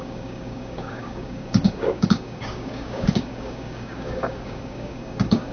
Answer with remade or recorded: remade